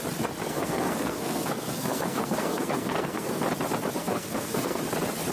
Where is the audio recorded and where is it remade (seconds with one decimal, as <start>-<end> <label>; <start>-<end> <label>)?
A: 0.0-0.4 recorded; 0.4-3.4 remade; 3.4-4.0 recorded; 4.0-4.8 remade; 4.8-5.3 recorded